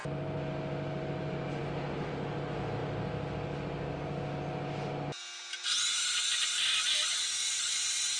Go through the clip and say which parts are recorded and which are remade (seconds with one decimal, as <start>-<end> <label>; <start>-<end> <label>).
0.0-8.2 recorded